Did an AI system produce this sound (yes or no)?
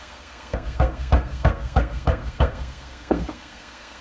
yes